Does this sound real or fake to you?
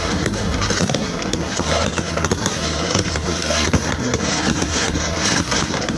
fake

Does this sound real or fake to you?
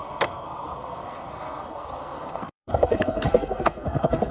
fake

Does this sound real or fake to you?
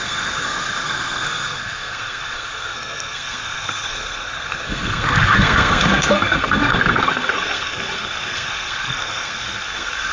fake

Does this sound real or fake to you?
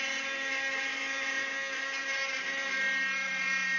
real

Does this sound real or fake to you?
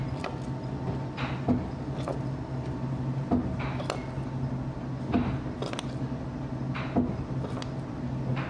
real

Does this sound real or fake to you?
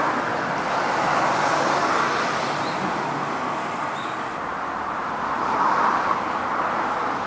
real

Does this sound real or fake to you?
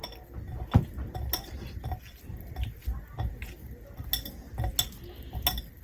real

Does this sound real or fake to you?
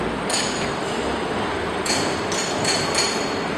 real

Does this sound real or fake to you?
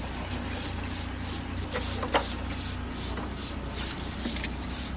real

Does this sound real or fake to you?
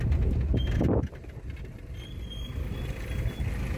real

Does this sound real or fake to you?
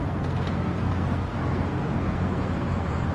fake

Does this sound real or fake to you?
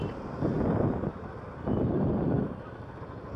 real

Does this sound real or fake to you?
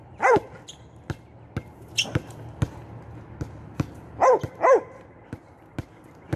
real